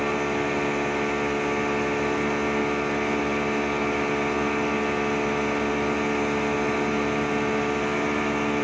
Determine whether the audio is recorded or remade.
recorded